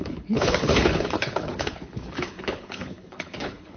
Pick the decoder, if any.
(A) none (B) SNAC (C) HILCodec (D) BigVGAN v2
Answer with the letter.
C